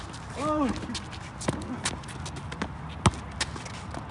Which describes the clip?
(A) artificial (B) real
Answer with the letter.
B